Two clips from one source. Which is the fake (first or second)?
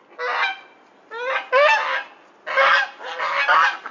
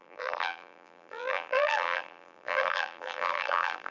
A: second